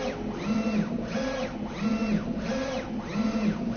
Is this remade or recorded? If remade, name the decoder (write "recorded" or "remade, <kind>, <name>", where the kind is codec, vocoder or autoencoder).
recorded